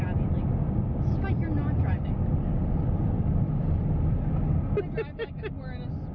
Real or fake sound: real